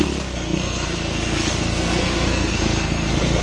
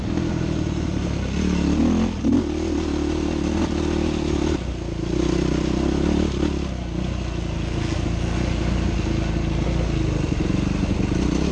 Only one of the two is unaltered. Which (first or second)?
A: second